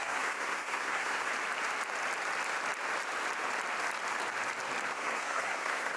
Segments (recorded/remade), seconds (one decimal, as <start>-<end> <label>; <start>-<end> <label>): 0.0-1.3 remade; 1.3-4.9 recorded; 4.9-6.0 remade